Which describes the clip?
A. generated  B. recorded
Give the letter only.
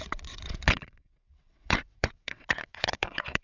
A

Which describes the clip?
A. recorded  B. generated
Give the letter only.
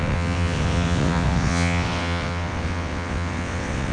B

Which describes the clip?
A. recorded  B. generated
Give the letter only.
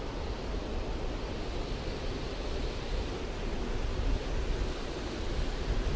A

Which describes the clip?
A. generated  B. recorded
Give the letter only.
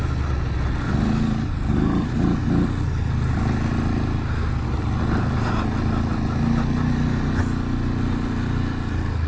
B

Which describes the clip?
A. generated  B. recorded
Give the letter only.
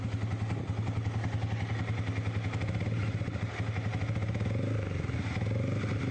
B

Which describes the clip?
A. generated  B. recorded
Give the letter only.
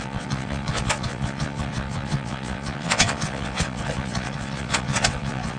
A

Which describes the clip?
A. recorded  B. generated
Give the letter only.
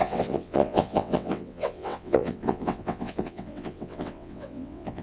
B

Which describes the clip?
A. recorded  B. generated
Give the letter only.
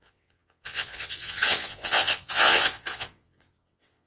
B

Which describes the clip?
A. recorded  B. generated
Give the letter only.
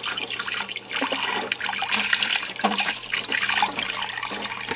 A